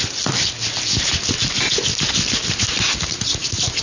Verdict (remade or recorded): recorded